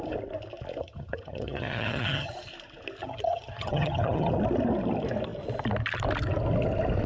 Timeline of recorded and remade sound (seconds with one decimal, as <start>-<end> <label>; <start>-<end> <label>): 0.0-0.8 recorded; 0.8-2.3 remade; 2.3-3.0 recorded; 3.0-4.3 remade; 4.3-7.1 recorded